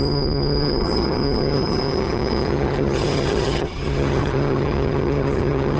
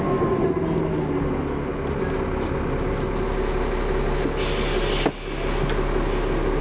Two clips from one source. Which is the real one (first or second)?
second